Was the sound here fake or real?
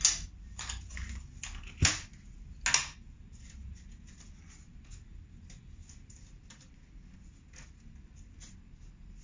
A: real